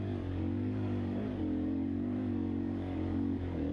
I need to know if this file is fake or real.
fake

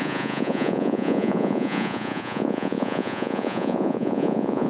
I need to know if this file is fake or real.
fake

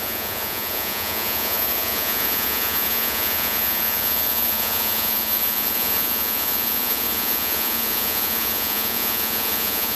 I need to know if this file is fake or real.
fake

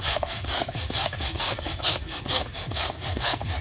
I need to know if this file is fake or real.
fake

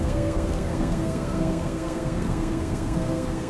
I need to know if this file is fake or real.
fake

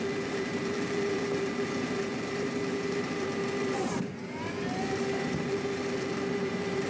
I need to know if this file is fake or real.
fake